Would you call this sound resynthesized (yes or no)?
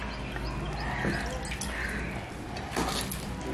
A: no